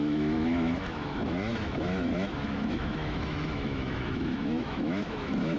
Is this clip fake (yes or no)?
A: yes